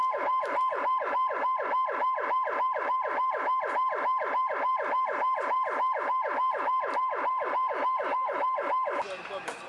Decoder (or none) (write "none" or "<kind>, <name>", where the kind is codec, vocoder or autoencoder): none